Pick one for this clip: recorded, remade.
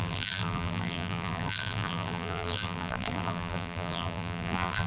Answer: remade